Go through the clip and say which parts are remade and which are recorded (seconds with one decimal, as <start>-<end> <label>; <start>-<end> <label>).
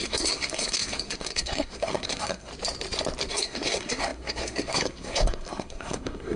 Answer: 0.0-2.5 remade; 2.5-3.3 recorded; 3.3-6.4 remade